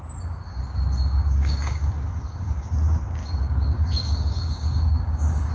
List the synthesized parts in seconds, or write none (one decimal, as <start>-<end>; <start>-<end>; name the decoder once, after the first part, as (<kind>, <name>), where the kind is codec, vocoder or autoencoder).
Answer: 1.4-2.7 (codec, DAC); 3.2-5.5